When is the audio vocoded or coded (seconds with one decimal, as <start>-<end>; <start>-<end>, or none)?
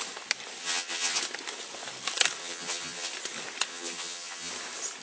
0.6-1.2; 2.4-3.1; 3.7-4.5